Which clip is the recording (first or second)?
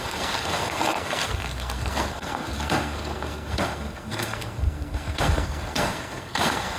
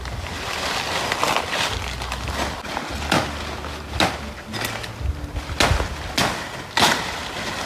second